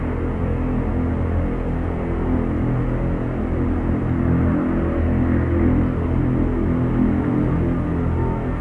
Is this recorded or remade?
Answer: recorded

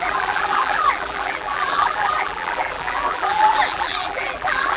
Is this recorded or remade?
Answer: remade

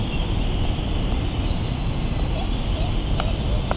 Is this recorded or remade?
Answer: recorded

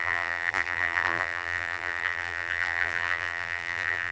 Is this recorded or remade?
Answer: remade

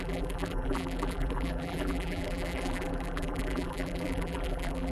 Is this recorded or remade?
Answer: remade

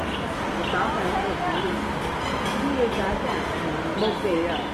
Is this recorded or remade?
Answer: recorded